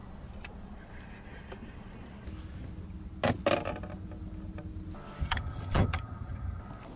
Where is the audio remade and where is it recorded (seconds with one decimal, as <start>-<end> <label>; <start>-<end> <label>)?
0.0-5.2 recorded; 5.2-6.6 remade; 6.6-7.0 recorded